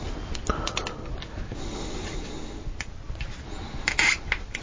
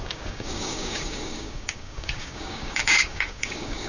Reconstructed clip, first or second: second